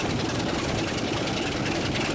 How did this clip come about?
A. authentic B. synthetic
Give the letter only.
A